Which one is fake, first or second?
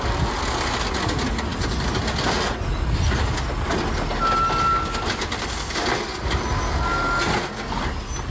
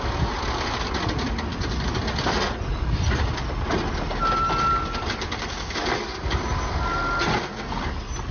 second